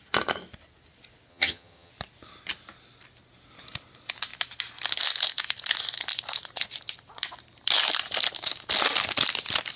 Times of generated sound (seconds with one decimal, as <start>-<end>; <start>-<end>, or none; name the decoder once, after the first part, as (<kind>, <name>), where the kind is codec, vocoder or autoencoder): 1.3-1.9 (vocoder, HiFi-GAN)